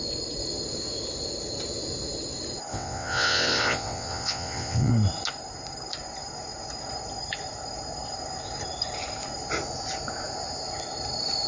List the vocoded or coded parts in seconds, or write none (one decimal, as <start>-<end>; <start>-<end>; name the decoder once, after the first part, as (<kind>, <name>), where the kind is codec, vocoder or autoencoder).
2.7-4.9 (vocoder, WaveNeXt)